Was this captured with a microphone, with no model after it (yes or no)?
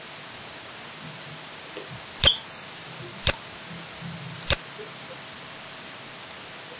yes